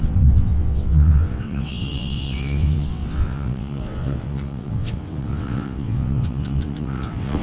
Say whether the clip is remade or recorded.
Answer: remade